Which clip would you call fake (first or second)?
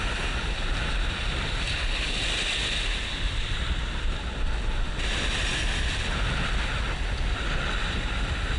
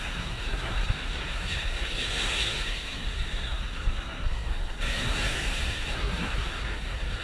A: second